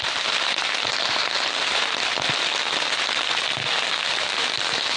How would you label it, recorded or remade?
recorded